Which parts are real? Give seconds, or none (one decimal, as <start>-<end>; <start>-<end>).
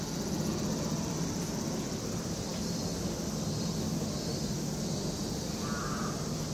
0.0-6.5